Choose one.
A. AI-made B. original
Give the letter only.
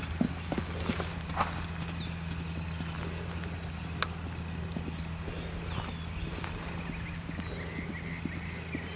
B